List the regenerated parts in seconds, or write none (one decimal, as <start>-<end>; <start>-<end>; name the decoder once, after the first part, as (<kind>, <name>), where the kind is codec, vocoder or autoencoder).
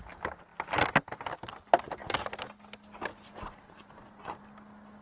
3.1-4.4 (vocoder, Vocos)